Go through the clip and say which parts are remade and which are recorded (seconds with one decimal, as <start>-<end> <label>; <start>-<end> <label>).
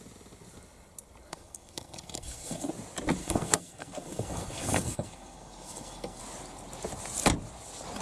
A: 0.0-1.3 recorded; 1.3-2.7 remade; 2.7-3.2 recorded; 3.2-6.2 remade; 6.2-8.0 recorded